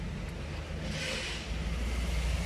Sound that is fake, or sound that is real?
real